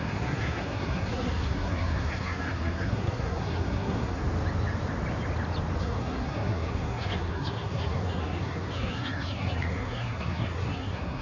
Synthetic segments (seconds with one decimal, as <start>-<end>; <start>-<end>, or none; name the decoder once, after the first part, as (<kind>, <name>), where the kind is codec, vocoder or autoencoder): 0.0-4.2 (codec, SNAC); 5.8-11.2